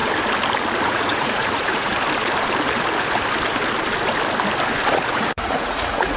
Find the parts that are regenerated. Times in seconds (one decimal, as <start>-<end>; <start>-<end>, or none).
0.9-1.9; 4.9-6.2